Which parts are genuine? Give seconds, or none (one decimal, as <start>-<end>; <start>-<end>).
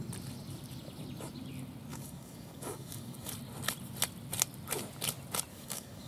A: 0.0-1.9; 3.3-5.5